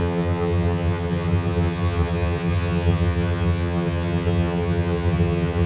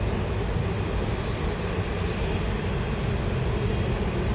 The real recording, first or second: second